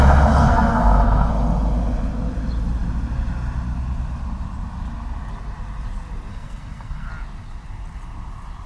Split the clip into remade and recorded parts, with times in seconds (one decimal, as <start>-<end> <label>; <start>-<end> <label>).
0.0-0.4 recorded; 0.4-1.3 remade; 1.3-6.3 recorded; 6.3-7.1 remade; 7.1-8.7 recorded